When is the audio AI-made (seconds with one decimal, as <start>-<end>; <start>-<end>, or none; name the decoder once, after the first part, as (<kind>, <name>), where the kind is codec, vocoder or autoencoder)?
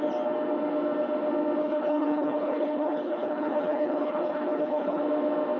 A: 1.6-5.0 (codec, HILCodec)